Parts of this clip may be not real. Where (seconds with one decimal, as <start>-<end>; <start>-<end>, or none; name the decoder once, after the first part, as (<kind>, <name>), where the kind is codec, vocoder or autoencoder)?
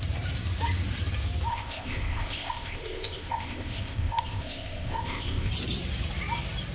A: 1.5-5.5 (codec, ZipCodec)